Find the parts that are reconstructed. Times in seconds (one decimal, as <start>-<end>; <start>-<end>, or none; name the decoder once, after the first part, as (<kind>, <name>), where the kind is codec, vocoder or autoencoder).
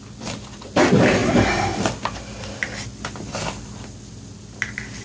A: none